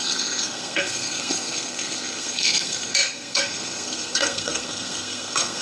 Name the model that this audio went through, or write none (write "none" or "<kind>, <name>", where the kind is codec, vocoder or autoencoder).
codec, SNAC